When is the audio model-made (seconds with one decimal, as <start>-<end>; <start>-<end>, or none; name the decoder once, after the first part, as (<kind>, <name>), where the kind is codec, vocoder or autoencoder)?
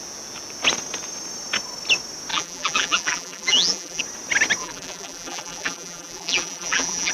2.3-4.0 (vocoder, BigVGAN v2); 4.6-7.1